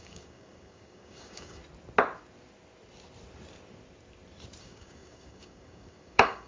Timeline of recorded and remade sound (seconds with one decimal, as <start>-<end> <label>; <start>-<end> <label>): 0.0-1.6 remade; 1.6-4.6 recorded; 4.6-6.5 remade